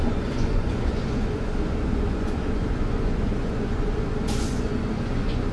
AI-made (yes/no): yes